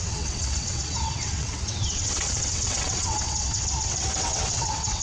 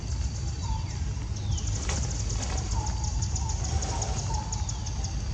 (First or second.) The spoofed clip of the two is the first